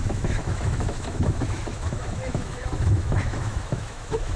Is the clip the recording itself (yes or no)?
no